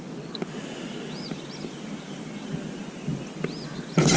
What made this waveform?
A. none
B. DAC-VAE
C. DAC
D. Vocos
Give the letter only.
A